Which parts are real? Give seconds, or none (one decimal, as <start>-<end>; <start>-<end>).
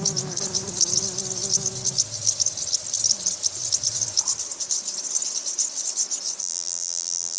0.0-6.4